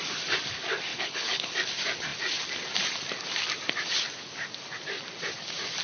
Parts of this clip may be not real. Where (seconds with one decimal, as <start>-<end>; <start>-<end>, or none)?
0.9-1.5